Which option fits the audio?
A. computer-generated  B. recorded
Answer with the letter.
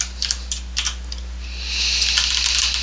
B